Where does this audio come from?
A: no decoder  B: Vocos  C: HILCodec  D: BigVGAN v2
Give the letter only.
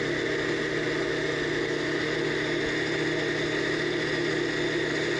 A